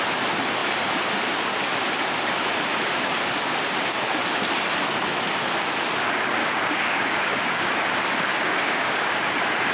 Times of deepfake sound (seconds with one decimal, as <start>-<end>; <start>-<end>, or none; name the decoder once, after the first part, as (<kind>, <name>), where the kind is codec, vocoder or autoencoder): 6.4-7.7 (codec, DAC); 8.3-9.2